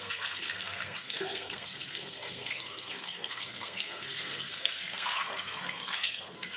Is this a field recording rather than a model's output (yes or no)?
no